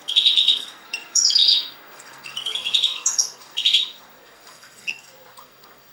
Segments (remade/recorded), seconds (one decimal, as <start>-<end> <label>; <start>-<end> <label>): 0.0-5.9 remade